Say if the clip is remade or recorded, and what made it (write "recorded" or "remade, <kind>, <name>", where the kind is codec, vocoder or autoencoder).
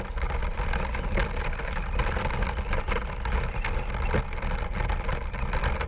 recorded